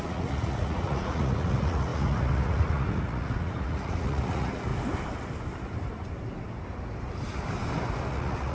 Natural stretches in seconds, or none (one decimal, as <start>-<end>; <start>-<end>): 4.7-8.1